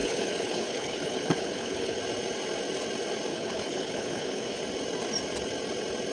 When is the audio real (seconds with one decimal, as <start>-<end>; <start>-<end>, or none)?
2.0-3.3; 4.6-6.1